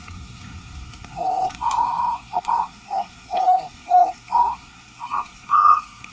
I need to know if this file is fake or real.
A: fake